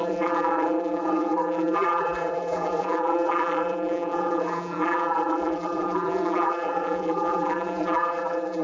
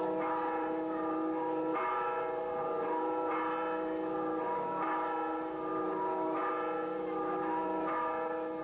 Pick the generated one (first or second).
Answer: first